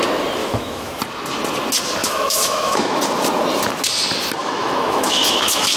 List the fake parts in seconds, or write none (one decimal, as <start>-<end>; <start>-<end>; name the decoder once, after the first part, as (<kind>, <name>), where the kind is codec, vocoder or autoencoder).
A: 0.4-1.0 (autoencoder, DAC-VAE); 2.0-3.0; 4.4-5.8